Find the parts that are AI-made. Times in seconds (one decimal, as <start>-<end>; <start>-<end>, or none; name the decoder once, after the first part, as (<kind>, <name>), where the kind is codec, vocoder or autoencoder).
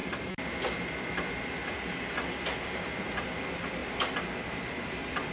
none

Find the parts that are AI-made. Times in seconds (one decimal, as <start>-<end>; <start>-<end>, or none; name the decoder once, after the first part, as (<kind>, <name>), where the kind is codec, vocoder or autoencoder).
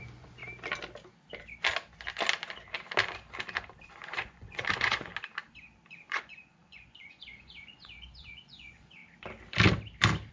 0.0-0.4 (vocoder, Vocos); 3.9-5.1; 5.9-9.0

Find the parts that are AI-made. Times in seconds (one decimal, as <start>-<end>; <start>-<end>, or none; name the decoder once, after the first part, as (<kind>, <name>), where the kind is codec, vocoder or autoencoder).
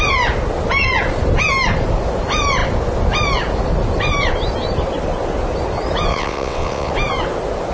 6.1-6.9 (vocoder, WaveNeXt)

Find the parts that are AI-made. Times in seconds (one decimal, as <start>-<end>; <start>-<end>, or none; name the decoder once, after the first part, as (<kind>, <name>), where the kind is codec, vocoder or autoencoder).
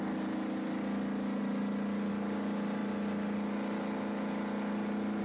none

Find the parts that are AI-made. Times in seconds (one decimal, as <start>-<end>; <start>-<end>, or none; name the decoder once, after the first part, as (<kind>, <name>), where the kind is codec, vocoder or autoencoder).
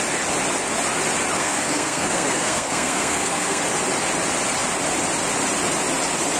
1.4-3.6 (codec, SNAC)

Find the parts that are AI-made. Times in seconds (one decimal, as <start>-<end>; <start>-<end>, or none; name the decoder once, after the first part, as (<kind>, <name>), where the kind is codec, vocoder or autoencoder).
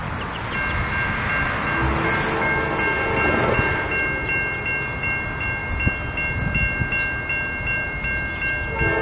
none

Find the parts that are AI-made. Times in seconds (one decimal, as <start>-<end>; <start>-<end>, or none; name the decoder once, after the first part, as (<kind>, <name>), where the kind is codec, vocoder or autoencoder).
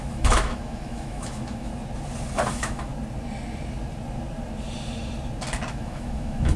0.0-1.7 (autoencoder, DAC-VAE); 2.5-2.9; 5.7-6.6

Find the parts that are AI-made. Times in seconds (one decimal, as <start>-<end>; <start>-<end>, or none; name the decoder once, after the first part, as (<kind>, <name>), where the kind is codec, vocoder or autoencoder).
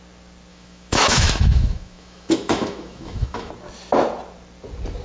0.5-3.5 (autoencoder, DAC-VAE)